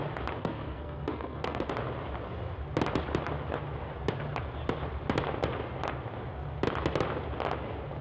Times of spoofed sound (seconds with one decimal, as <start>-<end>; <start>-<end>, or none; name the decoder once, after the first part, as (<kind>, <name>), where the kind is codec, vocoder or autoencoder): 0.4-1.7 (codec, SNAC)